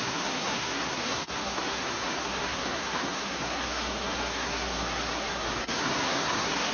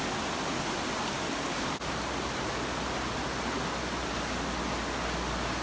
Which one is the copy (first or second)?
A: first